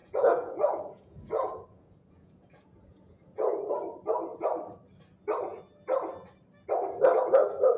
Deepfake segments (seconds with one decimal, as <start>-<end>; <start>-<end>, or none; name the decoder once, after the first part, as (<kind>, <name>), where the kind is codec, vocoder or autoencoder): 0.0-3.7 (vocoder, Vocos)